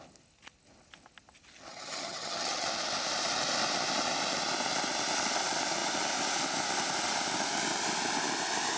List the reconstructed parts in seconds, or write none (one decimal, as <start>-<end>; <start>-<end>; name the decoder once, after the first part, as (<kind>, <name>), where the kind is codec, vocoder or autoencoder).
1.7-2.7 (vocoder, HiFi-GAN)